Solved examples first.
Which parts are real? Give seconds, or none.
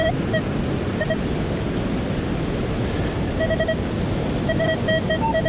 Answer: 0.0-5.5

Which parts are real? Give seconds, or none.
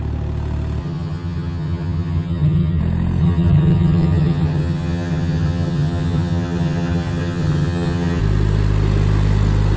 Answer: 0.0-0.8; 2.8-3.2; 8.2-9.8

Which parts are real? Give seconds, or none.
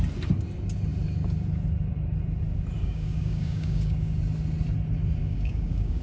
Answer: 0.0-2.8; 4.2-5.2